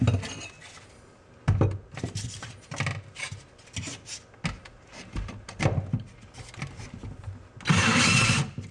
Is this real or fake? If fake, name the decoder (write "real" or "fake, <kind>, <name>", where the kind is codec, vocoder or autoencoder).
real